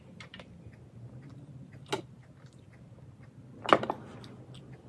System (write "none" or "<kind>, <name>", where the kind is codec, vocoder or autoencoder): none